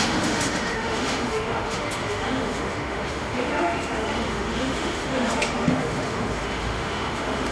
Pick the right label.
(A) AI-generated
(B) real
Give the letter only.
A